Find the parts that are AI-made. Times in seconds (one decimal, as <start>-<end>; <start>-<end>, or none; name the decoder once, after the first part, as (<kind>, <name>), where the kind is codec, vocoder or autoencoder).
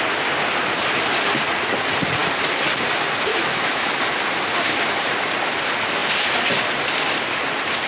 3.3-3.9 (autoencoder, DAC-VAE)